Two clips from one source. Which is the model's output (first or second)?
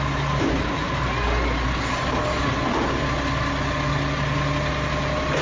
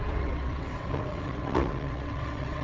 second